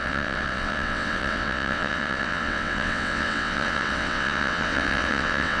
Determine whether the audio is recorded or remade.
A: remade